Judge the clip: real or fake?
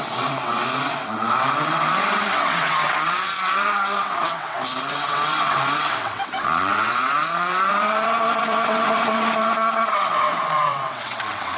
fake